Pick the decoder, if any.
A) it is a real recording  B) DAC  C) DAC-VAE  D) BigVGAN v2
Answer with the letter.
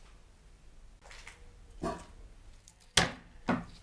A